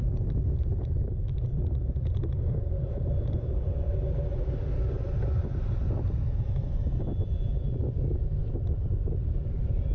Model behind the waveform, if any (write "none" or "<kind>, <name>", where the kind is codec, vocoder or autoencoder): vocoder, BigVGAN v2